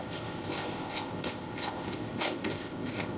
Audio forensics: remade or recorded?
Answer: remade